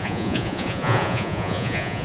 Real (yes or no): no